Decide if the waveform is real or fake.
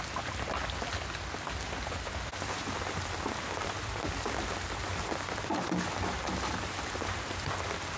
real